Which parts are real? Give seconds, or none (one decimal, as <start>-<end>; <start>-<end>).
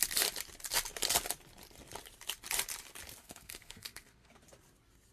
0.0-3.2; 4.3-5.1